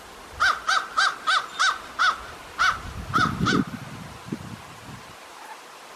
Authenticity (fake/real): real